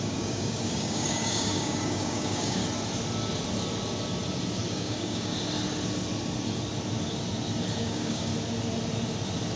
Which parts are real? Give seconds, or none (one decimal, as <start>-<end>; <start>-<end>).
2.6-4.7; 5.3-7.8; 8.3-9.6